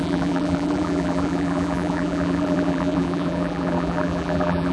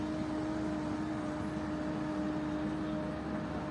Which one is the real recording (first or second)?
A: second